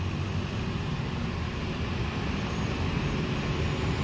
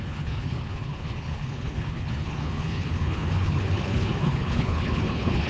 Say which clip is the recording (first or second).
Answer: first